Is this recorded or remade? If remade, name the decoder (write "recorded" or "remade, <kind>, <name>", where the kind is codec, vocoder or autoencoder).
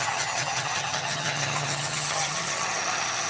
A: remade, vocoder, HiFi-GAN